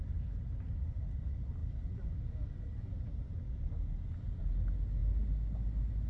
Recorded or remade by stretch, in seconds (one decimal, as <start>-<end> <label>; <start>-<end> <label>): 0.0-6.1 recorded